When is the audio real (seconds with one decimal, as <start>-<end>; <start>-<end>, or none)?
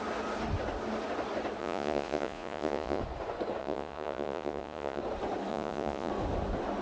0.0-1.6; 3.0-3.6; 5.0-5.5; 6.1-6.8